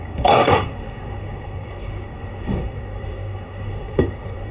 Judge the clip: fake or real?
fake